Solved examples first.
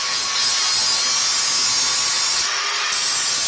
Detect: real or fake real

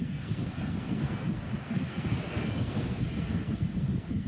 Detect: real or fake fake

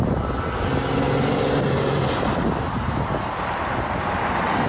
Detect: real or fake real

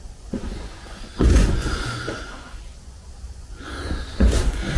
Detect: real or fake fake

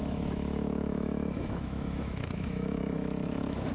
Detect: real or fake fake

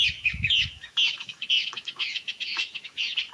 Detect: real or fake fake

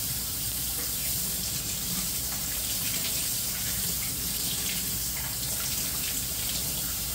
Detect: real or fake fake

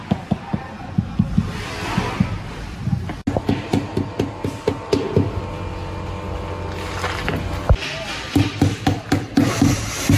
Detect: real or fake real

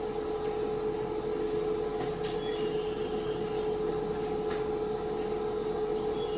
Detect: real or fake real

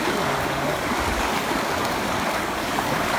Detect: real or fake fake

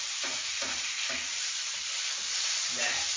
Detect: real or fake fake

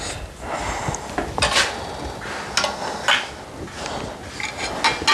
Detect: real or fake real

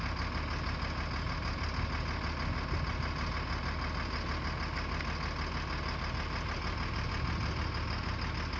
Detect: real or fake real